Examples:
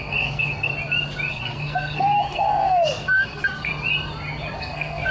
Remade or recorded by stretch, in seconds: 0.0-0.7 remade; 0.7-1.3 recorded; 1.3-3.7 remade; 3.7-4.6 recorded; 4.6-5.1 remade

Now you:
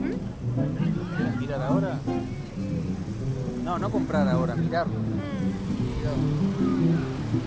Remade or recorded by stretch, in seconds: 0.0-7.5 recorded

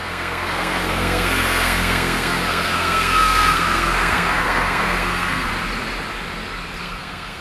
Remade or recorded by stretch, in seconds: 0.0-5.5 remade; 5.5-6.8 recorded; 6.8-7.4 remade

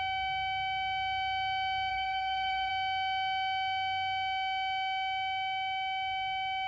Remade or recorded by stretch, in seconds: 0.0-1.9 recorded; 1.9-2.7 remade; 2.7-6.7 recorded

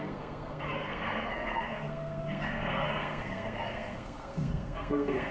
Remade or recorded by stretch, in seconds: 0.0-5.3 remade